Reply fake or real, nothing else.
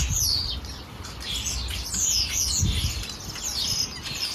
real